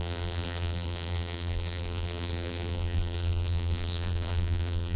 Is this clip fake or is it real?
fake